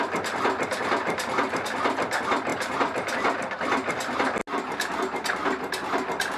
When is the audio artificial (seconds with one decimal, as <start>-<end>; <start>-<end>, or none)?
none